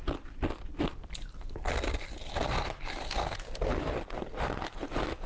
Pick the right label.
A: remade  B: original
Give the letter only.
B